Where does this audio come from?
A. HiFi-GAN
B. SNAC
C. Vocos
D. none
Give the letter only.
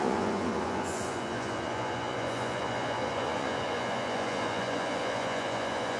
C